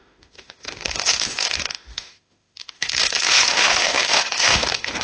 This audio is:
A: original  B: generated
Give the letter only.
B